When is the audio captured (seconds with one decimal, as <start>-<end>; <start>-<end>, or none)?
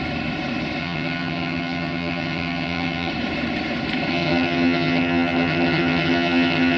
0.0-0.8; 3.1-4.1